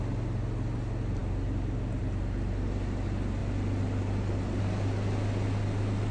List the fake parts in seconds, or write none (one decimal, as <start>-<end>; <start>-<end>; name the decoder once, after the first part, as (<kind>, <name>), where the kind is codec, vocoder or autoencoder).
none